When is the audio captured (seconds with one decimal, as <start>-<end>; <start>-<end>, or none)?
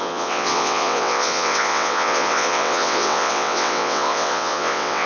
none